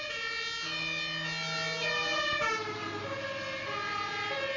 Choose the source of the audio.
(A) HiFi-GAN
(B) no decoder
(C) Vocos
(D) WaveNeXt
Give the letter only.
B